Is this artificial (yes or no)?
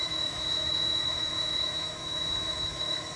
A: yes